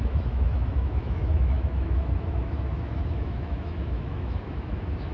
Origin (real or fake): fake